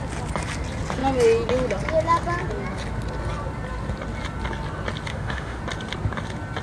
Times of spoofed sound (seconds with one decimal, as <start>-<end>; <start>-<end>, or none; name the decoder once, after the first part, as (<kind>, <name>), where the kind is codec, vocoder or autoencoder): 5.1-5.6 (autoencoder, DAC-VAE)